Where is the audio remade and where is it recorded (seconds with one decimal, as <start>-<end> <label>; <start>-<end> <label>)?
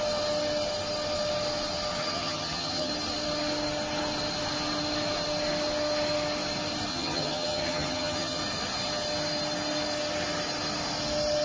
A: 0.0-2.0 recorded; 2.0-2.9 remade; 2.9-6.9 recorded; 6.9-8.4 remade; 8.4-11.4 recorded